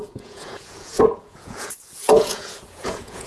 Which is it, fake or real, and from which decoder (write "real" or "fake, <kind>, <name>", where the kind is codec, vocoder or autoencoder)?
fake, vocoder, Vocos